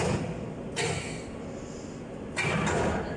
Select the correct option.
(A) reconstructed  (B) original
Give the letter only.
B